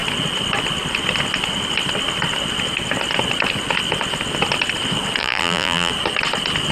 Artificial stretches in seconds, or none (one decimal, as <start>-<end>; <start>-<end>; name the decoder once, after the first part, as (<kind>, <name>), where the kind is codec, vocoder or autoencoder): 5.2-5.9 (vocoder, BigVGAN v2)